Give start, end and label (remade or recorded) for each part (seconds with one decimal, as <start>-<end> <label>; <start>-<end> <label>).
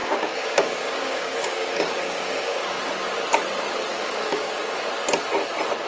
0.0-2.8 remade; 2.8-3.9 recorded; 3.9-4.8 remade; 4.8-5.9 recorded